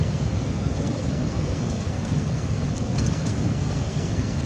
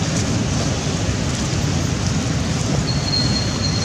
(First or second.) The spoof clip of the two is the first